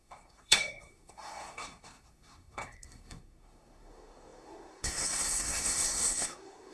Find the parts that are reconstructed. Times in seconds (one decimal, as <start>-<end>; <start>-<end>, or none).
0.0-6.7